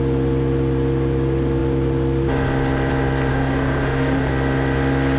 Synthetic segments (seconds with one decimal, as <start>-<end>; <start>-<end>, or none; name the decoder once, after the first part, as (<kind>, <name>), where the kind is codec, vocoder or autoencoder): 3.3-4.3 (autoencoder, DAC-VAE)